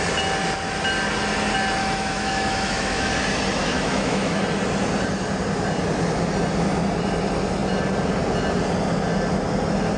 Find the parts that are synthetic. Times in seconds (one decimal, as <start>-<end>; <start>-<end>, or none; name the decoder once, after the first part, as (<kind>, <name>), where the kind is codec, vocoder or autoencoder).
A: 1.8-3.1 (autoencoder, DAC-VAE); 3.6-4.4